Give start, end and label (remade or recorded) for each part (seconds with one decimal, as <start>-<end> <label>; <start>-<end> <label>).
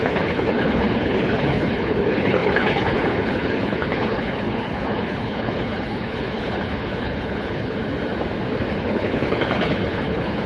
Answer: 0.0-7.8 remade; 7.8-8.7 recorded; 8.7-10.5 remade